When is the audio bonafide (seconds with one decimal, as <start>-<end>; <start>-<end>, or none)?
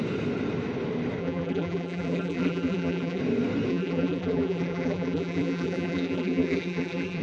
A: 0.0-1.2; 3.2-3.7